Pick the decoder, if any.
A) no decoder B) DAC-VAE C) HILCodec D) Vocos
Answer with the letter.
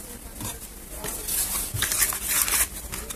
A